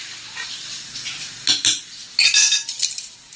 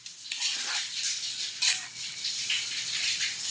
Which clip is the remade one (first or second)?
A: second